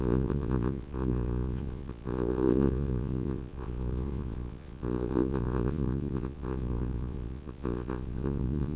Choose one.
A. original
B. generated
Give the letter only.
B